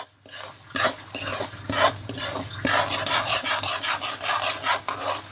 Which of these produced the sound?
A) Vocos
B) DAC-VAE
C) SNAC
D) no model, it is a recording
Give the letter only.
D